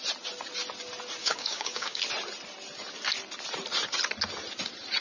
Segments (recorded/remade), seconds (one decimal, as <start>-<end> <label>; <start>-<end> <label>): 0.0-1.2 recorded; 1.2-2.0 remade; 2.0-5.0 recorded

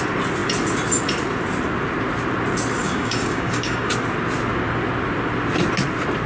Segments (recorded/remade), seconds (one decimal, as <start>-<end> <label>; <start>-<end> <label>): 0.0-2.8 recorded; 2.8-3.9 remade; 3.9-6.3 recorded